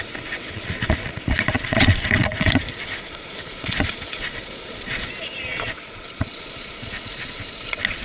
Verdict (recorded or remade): remade